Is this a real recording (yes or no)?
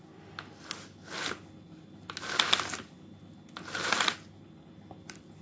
yes